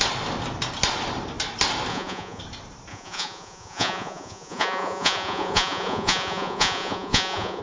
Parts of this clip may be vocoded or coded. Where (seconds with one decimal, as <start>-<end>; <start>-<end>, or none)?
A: 1.9-2.4; 2.9-7.6